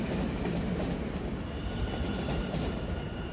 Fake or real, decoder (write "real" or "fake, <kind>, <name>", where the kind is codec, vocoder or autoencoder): fake, vocoder, BigVGAN v2